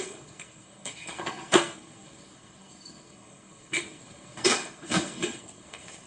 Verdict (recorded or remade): remade